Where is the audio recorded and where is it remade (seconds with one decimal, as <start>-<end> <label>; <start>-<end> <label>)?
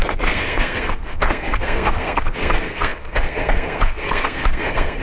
0.0-5.0 remade